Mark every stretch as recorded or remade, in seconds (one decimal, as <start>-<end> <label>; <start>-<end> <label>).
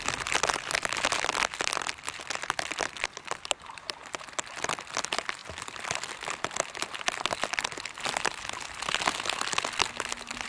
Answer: 0.0-10.5 recorded